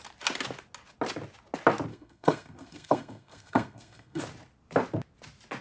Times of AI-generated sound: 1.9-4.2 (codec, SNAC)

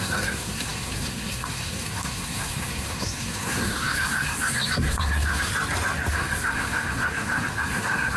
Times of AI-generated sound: 0.0-5.5 (codec, SNAC); 6.1-8.2

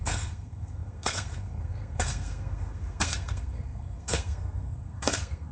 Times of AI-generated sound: 0.0-5.5 (codec, SNAC)

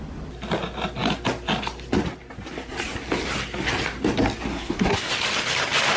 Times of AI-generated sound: 4.5-5.1 (codec, SNAC)